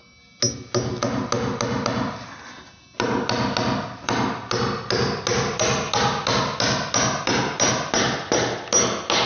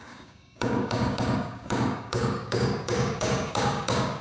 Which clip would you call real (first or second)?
first